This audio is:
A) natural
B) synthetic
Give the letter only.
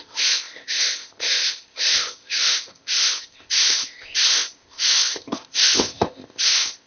B